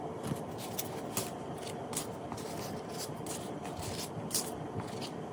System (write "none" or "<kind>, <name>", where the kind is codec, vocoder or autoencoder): none